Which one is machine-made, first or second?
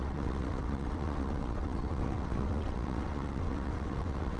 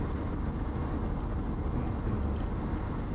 first